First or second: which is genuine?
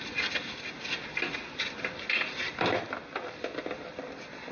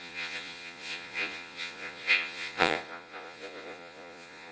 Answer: first